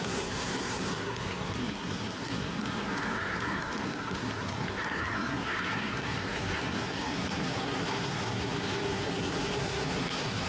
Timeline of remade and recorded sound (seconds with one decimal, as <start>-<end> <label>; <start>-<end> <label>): 0.0-10.5 remade

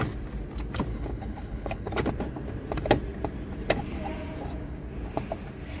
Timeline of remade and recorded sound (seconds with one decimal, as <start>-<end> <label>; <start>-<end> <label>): 0.0-0.9 recorded; 0.9-1.9 remade; 1.9-5.8 recorded

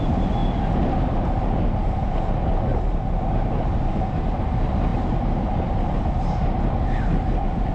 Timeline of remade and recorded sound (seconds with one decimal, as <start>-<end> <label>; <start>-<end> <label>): 0.0-7.7 recorded

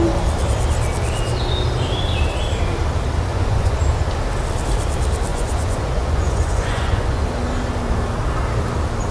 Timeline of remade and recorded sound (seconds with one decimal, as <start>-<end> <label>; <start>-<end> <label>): 0.0-3.3 recorded; 3.3-3.8 remade; 3.8-5.3 recorded; 5.3-7.2 remade; 7.2-9.1 recorded

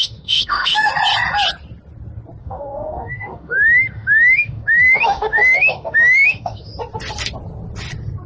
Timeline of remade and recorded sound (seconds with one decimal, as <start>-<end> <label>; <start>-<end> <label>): 0.0-0.9 remade; 0.9-2.4 recorded; 2.4-6.7 remade; 6.7-8.3 recorded

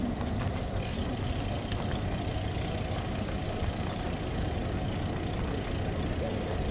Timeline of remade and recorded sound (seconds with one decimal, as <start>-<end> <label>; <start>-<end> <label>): 0.0-6.7 recorded

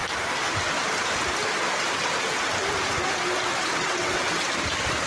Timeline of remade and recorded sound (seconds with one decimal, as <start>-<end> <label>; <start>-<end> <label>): 0.0-3.7 recorded; 3.7-4.5 remade; 4.5-5.1 recorded

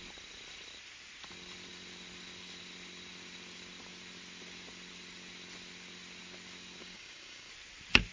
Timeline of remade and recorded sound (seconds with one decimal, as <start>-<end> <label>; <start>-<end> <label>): 0.0-6.8 recorded; 6.8-7.5 remade; 7.5-8.1 recorded